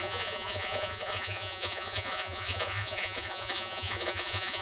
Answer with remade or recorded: remade